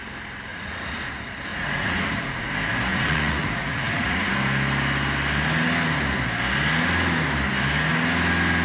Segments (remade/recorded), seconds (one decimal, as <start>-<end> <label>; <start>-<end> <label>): 0.0-0.5 recorded; 0.5-1.1 remade; 1.1-1.5 recorded; 1.5-2.5 remade; 2.5-2.9 recorded; 2.9-4.3 remade; 4.3-8.6 recorded